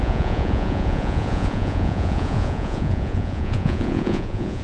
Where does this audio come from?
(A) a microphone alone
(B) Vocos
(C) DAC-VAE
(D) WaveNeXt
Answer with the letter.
B